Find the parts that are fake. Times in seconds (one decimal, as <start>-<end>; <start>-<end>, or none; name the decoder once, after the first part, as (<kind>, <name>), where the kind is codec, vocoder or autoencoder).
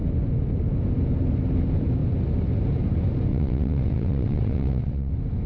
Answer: 3.3-5.1 (vocoder, WaveNeXt)